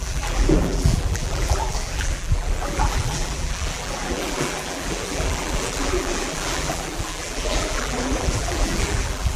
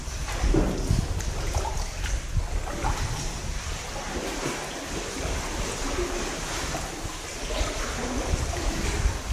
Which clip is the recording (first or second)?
second